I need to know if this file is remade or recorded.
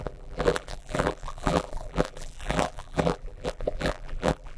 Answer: remade